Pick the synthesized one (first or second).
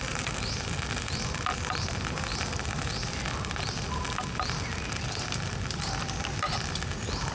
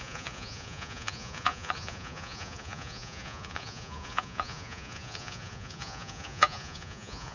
second